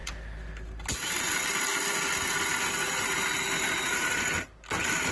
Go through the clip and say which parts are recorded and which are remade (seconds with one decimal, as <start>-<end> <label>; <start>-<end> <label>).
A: 0.0-5.1 recorded